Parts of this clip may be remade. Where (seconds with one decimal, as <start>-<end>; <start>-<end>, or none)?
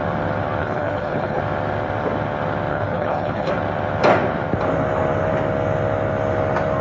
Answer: 0.6-1.4; 2.7-3.5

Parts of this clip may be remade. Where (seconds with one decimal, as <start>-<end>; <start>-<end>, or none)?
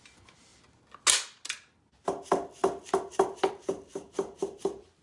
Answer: none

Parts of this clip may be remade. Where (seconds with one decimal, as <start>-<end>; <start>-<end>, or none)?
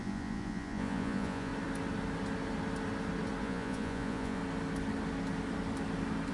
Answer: 0.0-1.5; 3.4-4.4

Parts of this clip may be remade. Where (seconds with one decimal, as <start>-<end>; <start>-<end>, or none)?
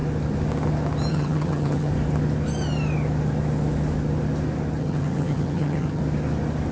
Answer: 1.1-1.9; 4.8-6.0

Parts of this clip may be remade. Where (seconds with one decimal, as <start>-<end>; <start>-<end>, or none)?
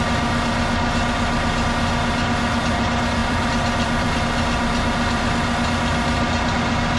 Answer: 3.2-4.2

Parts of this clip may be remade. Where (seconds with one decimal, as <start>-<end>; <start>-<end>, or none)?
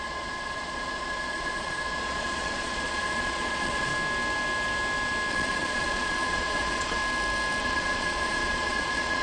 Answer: 0.0-3.9; 5.3-7.0; 7.6-9.2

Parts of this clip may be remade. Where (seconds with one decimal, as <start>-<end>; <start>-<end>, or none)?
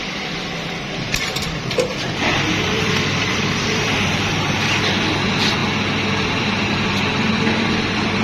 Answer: 0.0-5.6; 6.4-8.2